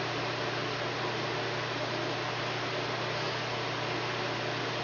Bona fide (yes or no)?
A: yes